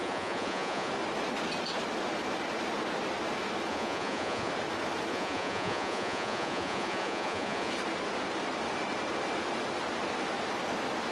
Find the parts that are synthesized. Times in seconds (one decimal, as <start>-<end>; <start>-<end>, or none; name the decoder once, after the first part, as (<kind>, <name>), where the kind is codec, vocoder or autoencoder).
0.0-0.9 (vocoder, Vocos); 3.7-4.5; 5.1-7.7